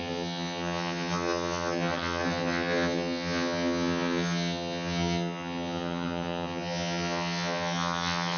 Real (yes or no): no